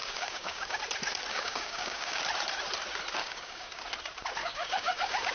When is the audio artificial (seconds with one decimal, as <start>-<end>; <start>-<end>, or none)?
0.0-0.8; 1.3-2.2; 3.2-3.8; 4.4-5.3